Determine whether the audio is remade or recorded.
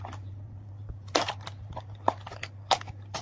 recorded